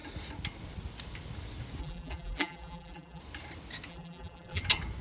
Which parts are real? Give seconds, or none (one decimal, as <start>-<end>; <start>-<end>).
0.0-1.8; 3.2-3.9; 4.6-5.0